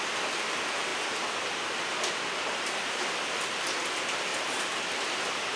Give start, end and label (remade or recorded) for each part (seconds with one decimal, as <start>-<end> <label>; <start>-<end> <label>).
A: 0.0-5.6 recorded